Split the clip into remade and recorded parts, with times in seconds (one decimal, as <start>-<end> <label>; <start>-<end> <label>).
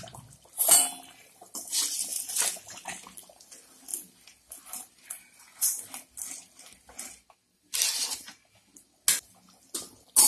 0.0-10.3 recorded